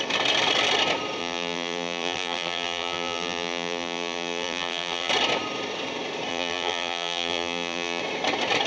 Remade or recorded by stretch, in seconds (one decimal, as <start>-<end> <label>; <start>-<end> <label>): 0.0-1.2 recorded; 1.2-5.1 remade; 5.1-6.3 recorded; 6.3-8.0 remade; 8.0-8.7 recorded